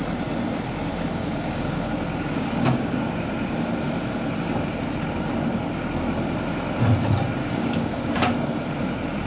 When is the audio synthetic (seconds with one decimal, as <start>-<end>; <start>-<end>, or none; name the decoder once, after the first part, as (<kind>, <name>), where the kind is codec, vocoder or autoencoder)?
0.9-3.1 (codec, DAC); 7.4-8.0